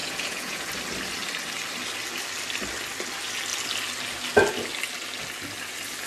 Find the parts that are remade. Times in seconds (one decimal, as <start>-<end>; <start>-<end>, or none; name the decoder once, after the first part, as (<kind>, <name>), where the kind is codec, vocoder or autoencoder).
0.0-0.7 (vocoder, Vocos)

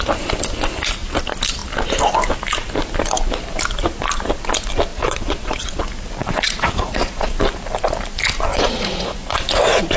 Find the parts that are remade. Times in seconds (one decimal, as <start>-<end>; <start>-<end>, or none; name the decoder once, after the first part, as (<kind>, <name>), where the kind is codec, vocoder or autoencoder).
4.9-5.8 (vocoder, Vocos); 6.2-7.3; 8.5-9.5

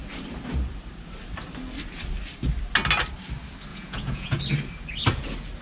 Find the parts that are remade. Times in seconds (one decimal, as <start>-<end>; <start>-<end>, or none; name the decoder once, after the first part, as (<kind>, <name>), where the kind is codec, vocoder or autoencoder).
3.7-4.4 (vocoder, Vocos)

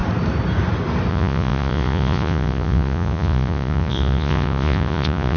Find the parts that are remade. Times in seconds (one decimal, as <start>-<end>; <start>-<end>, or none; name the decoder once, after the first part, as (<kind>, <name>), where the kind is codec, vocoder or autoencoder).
1.1-5.4 (vocoder, Vocos)